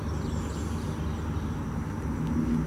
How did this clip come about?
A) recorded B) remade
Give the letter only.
A